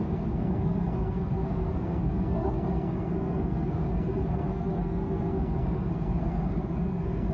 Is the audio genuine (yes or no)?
no